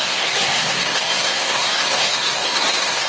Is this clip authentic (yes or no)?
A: no